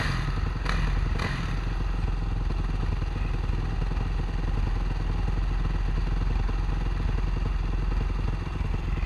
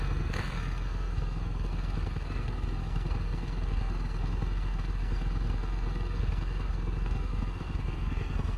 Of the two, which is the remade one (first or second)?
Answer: second